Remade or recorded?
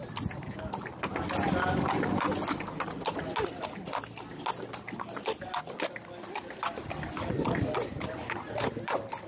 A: recorded